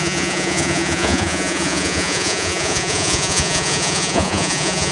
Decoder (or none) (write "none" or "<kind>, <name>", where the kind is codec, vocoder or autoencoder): vocoder, Vocos